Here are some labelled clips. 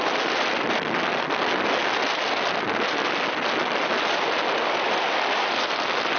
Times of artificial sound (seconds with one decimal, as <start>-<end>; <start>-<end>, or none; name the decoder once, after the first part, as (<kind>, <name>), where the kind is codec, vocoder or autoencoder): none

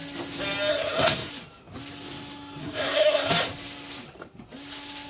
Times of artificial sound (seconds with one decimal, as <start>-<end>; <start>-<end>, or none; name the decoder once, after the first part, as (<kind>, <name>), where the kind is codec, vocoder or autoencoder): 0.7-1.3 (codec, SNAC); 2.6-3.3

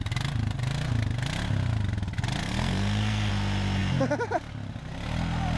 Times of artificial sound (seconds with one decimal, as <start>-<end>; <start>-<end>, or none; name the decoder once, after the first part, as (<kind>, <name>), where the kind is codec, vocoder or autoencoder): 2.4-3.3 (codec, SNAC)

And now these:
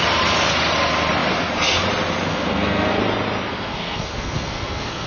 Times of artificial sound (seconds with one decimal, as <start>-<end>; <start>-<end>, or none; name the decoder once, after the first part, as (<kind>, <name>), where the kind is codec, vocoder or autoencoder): 2.3-3.0 (codec, SNAC); 3.5-5.1